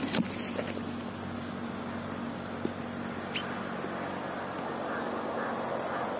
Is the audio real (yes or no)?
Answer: yes